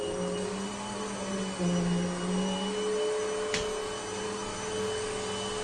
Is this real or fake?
real